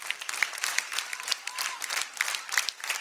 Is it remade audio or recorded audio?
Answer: remade